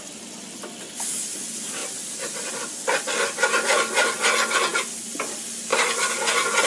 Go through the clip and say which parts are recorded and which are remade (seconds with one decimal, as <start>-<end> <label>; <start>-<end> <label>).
0.0-1.8 recorded; 1.8-2.5 remade; 2.5-5.7 recorded; 5.7-6.3 remade; 6.3-6.7 recorded